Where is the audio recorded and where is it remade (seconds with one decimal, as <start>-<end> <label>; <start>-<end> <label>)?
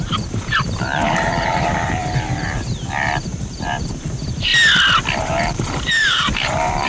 0.0-4.5 remade; 4.5-5.2 recorded; 5.2-6.9 remade